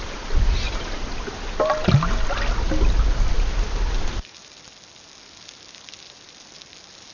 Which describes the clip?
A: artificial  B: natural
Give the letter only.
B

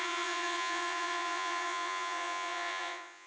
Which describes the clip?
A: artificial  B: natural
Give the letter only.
A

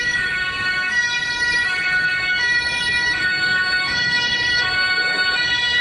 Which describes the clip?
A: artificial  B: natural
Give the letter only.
A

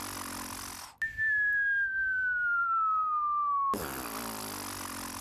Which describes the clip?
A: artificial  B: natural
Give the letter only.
B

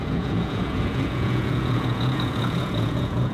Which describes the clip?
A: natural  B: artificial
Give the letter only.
B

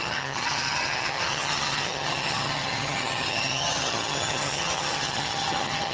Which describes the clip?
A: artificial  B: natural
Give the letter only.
A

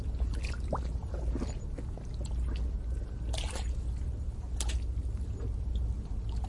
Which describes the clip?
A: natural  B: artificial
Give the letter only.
A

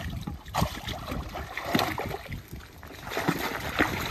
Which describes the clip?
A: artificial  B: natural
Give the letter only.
B